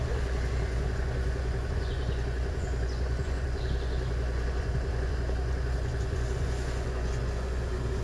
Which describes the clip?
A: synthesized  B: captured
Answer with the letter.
A